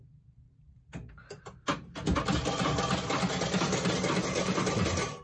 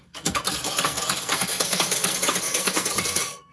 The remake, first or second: second